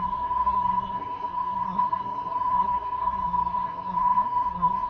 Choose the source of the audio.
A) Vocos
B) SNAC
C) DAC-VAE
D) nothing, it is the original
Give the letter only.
B